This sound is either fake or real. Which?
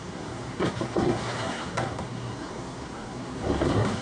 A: fake